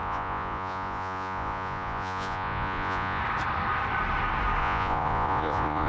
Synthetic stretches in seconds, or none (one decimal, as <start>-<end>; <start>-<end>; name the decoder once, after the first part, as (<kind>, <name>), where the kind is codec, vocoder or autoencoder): 0.0-3.2 (vocoder, Vocos); 4.6-5.9